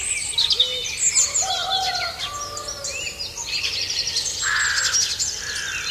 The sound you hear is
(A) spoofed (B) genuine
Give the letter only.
B